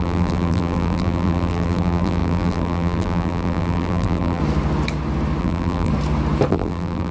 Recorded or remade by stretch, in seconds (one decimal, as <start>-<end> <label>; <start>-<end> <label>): 0.0-4.4 remade; 4.4-5.4 recorded; 5.4-5.9 remade; 5.9-6.5 recorded; 6.5-7.1 remade